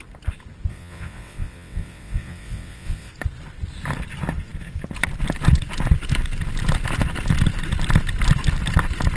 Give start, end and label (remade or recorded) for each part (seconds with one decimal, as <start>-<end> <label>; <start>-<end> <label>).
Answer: 0.0-0.7 recorded; 0.7-3.1 remade; 3.1-9.2 recorded